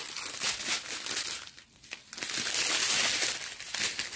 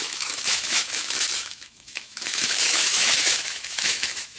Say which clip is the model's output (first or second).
second